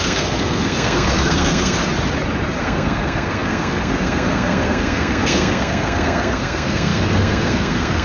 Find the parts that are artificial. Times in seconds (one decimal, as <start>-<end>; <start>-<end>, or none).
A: 0.0-1.8; 2.6-8.0

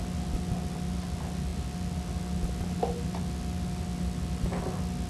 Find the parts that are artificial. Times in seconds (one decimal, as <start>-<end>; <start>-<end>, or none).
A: none

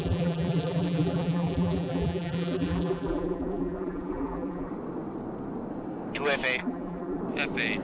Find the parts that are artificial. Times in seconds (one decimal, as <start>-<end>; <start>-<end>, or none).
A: 0.0-4.7; 6.6-7.2

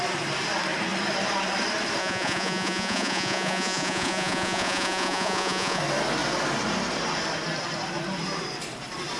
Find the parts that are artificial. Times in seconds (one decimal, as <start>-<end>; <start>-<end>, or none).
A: 2.0-5.8